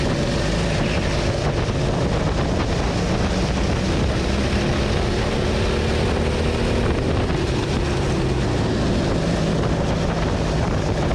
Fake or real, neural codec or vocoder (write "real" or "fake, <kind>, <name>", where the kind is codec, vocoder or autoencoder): real